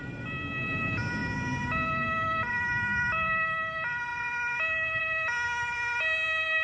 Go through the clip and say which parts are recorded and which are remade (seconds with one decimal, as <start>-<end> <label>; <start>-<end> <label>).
0.0-6.6 recorded